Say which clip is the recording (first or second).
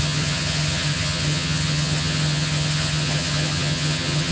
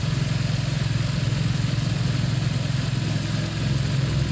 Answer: second